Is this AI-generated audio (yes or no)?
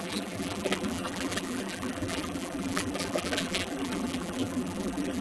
yes